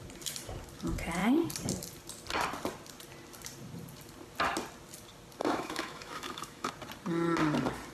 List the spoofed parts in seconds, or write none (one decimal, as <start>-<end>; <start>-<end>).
5.4-6.7